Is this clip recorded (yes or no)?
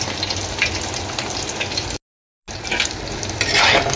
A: yes